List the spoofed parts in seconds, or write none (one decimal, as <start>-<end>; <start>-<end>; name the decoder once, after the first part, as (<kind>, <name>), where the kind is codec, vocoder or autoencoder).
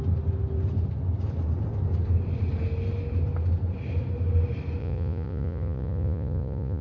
4.8-6.8 (vocoder, Vocos)